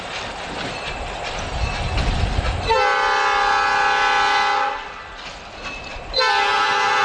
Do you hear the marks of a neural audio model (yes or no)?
no